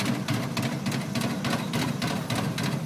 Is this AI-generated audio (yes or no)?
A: no